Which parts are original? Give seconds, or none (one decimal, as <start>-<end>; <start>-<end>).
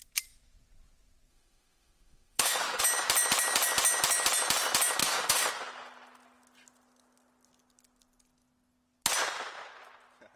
0.0-1.3; 2.8-5.0; 5.5-10.4